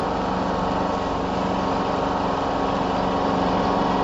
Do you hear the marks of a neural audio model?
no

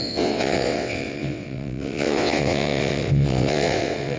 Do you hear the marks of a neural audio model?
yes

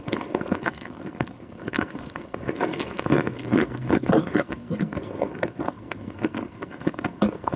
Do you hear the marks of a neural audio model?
yes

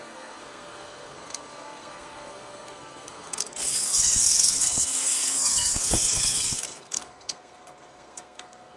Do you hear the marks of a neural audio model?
yes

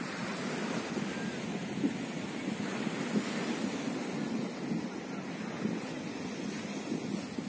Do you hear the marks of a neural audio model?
no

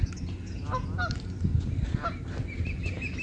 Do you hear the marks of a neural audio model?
no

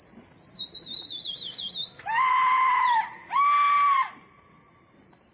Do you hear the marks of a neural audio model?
yes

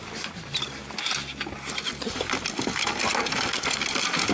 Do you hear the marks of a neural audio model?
no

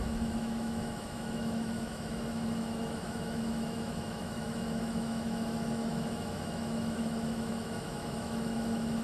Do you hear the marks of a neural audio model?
yes